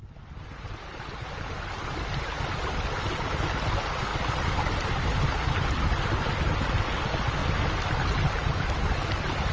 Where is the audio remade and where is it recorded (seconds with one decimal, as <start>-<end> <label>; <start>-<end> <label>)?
0.0-9.5 recorded